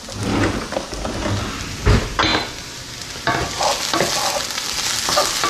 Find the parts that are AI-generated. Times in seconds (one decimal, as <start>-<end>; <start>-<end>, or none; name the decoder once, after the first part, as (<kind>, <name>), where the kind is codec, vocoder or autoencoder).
none